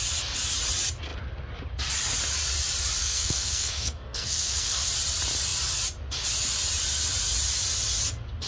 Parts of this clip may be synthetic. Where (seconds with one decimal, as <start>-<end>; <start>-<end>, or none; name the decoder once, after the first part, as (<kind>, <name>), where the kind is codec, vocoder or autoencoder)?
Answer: 3.0-4.9 (codec, SNAC)